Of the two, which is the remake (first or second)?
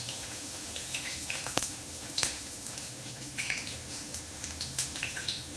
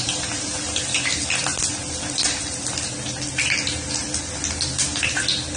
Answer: first